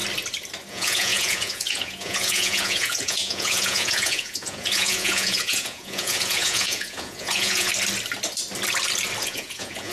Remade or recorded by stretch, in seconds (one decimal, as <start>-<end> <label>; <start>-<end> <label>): 0.0-0.7 recorded; 0.7-7.7 remade; 7.7-9.2 recorded; 9.2-9.9 remade